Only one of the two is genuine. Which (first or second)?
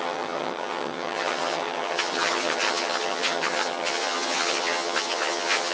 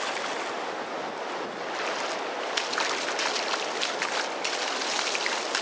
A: second